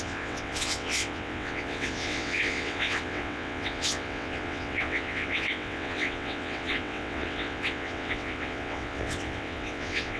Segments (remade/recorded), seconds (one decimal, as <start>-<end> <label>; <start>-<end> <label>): 0.0-10.2 remade